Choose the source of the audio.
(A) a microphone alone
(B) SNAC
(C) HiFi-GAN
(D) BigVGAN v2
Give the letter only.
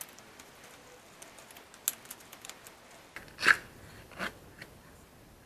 A